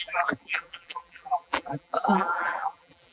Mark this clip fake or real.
fake